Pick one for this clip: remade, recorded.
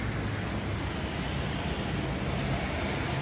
recorded